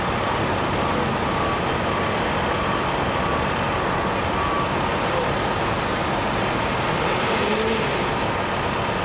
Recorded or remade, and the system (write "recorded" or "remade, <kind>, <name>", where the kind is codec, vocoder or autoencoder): recorded